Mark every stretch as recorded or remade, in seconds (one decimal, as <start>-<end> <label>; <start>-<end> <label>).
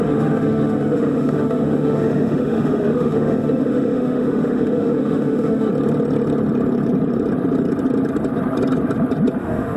0.0-5.7 remade; 5.7-9.4 recorded; 9.4-9.8 remade